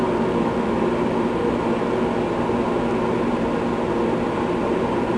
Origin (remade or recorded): recorded